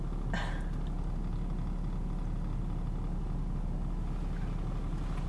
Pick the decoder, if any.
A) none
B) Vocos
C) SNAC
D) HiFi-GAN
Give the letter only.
A